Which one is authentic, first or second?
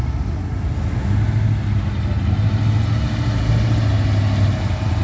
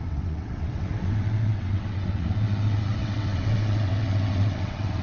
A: first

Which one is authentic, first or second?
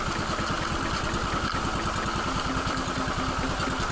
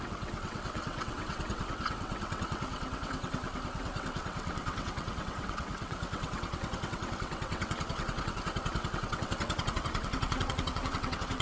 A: first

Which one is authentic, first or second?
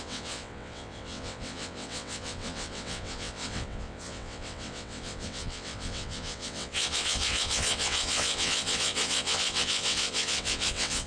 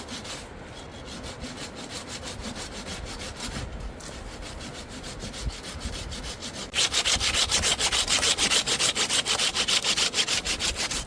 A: second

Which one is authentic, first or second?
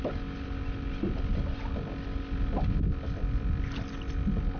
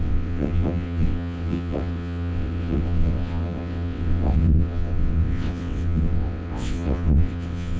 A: first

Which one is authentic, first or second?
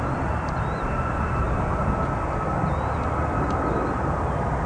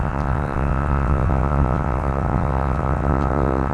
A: first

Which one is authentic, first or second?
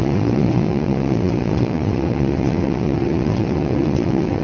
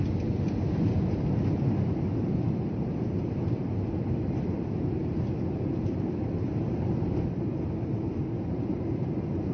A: second